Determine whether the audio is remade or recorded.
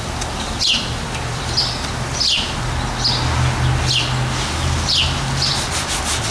recorded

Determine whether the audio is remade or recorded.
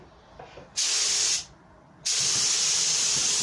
recorded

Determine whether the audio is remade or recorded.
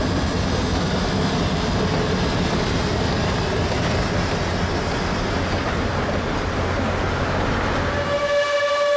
recorded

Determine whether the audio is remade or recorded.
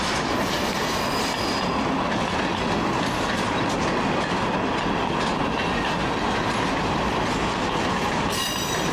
recorded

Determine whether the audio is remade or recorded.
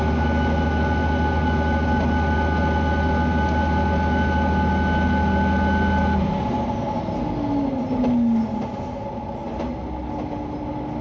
recorded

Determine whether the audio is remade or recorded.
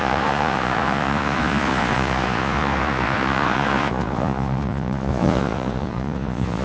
remade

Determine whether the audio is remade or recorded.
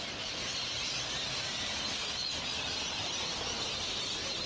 recorded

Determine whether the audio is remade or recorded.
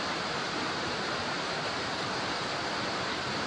remade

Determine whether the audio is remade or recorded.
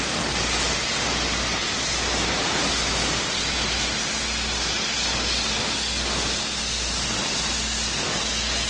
recorded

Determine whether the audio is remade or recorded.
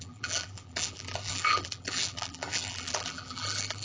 remade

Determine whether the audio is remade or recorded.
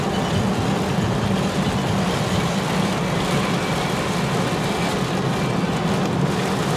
recorded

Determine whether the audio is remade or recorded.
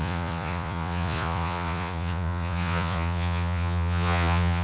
remade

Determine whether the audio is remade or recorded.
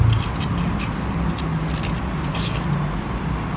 recorded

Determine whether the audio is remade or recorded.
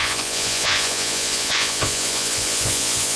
remade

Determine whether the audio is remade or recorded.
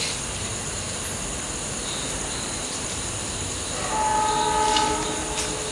recorded